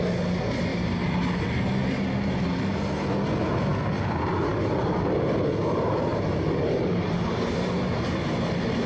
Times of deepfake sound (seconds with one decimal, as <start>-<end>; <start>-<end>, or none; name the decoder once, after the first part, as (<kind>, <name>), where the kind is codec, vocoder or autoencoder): 6.1-8.2 (vocoder, BigVGAN v2)